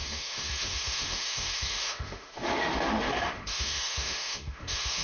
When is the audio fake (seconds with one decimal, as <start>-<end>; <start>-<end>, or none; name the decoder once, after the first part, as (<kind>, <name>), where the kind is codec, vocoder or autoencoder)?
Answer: 0.0-5.0 (autoencoder, DAC-VAE)